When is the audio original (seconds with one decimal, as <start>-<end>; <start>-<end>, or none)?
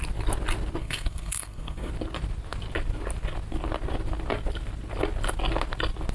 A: 0.0-0.8; 1.9-6.1